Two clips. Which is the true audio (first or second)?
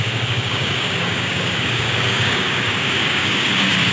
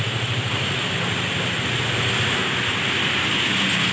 second